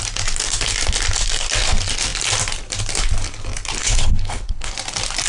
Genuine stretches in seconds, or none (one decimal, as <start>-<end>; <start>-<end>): 0.0-3.8; 4.7-5.3